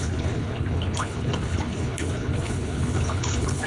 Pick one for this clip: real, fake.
fake